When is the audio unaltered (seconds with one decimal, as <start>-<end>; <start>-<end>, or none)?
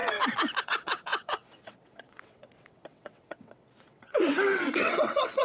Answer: 0.0-0.6